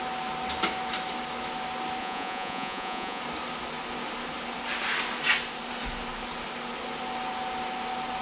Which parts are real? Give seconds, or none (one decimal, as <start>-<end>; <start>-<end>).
0.0-2.0; 3.2-8.2